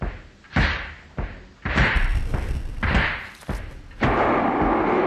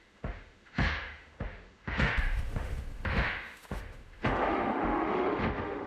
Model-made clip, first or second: second